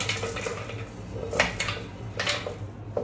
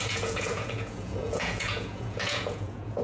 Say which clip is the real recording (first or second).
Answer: first